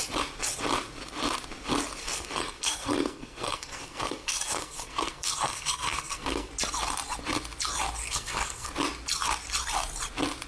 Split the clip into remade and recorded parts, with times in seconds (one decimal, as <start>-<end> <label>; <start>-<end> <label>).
0.0-2.0 recorded; 2.0-6.5 remade; 6.5-8.0 recorded; 8.0-8.7 remade; 8.7-10.5 recorded